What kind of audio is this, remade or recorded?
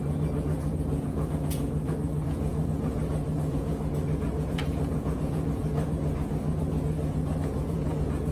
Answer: remade